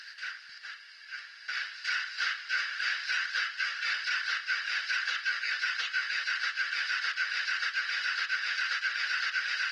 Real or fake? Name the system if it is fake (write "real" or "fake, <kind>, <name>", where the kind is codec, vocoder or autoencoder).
real